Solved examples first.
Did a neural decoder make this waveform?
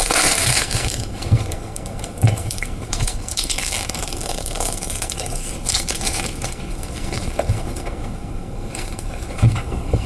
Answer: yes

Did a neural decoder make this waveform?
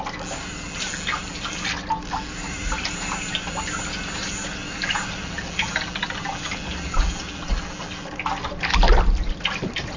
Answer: no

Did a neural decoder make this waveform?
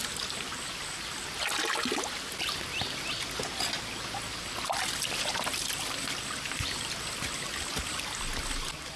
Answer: no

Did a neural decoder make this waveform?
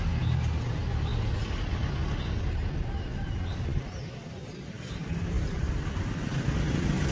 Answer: no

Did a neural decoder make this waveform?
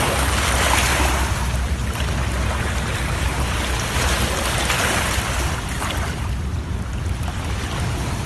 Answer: no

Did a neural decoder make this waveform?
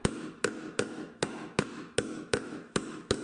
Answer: yes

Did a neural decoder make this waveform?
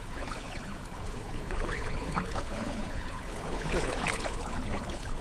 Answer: yes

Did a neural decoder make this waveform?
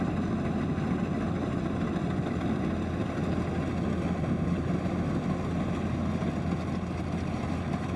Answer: no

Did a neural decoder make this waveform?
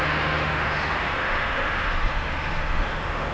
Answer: yes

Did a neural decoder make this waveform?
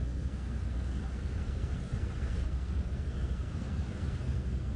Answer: yes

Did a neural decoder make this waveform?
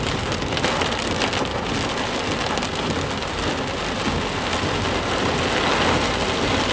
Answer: no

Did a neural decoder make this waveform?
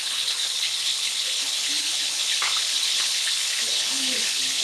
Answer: yes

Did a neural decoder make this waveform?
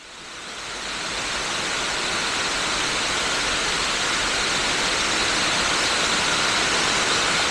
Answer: no